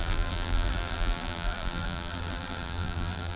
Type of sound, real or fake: fake